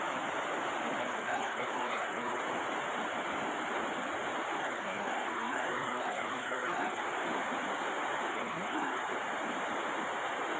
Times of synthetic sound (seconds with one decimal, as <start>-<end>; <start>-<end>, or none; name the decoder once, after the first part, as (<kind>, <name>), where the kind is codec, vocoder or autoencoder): 1.0-2.4 (codec, SNAC); 4.6-7.0; 8.3-9.0